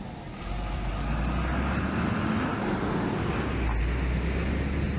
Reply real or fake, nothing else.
real